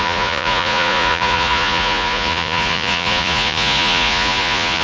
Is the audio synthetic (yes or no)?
yes